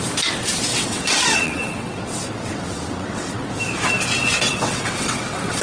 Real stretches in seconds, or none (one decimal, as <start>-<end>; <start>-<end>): 0.0-0.7; 3.5-4.2